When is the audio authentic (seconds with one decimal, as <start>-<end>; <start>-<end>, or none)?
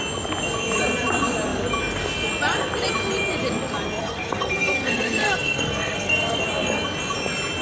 0.0-4.0; 6.4-7.6